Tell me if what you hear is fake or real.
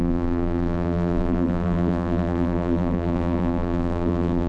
fake